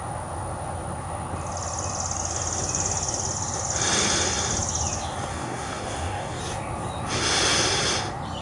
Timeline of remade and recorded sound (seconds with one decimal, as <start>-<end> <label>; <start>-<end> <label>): 0.0-5.3 recorded; 5.3-6.4 remade; 6.4-8.4 recorded